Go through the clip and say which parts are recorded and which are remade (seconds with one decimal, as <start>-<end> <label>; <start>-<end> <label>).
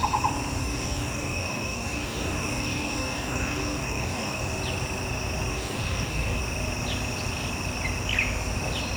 0.0-0.6 recorded; 0.6-4.4 remade; 4.4-5.5 recorded; 5.5-6.4 remade; 6.4-9.0 recorded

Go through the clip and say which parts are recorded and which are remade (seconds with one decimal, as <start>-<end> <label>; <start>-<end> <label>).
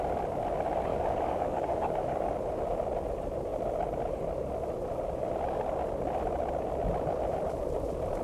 0.0-0.9 recorded; 0.9-2.3 remade; 2.3-8.2 recorded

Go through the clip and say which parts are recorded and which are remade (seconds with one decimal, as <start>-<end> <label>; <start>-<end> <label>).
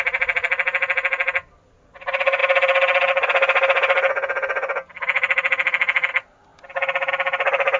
0.0-7.8 recorded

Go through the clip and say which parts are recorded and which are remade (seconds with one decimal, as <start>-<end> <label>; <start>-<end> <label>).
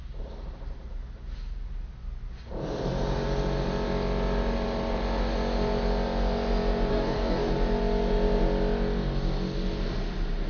0.0-6.9 recorded; 6.9-7.5 remade; 7.5-10.5 recorded